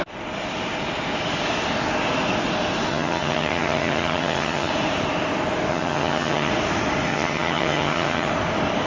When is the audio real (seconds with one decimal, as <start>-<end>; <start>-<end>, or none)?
0.0-2.9; 4.7-5.7; 6.5-7.1; 8.3-8.9